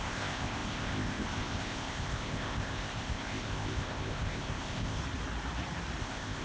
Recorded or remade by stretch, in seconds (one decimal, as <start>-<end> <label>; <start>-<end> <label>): 0.0-5.0 remade; 5.0-6.0 recorded; 6.0-6.4 remade